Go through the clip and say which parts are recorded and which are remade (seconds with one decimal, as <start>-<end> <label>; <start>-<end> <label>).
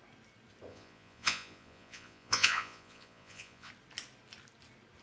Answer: 0.0-0.7 recorded; 0.7-3.7 remade; 3.7-5.0 recorded